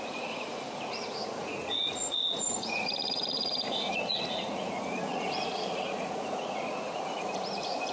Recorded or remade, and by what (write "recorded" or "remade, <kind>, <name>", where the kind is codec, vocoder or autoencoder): remade, vocoder, Vocos